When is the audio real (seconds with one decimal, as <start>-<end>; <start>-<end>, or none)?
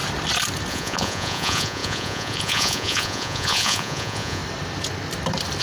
0.0-0.7; 4.4-5.6